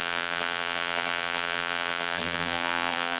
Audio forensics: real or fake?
fake